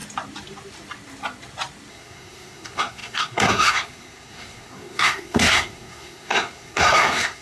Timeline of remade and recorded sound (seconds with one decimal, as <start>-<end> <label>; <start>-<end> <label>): 0.0-1.9 recorded; 1.9-7.4 remade